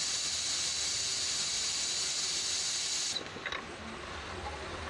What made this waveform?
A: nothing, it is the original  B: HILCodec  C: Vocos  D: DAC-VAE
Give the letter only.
A